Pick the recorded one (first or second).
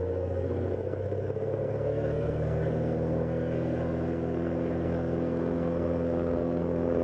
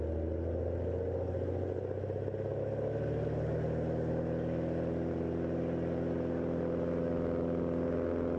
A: second